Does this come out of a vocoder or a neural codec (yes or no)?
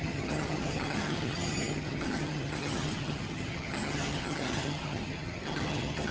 yes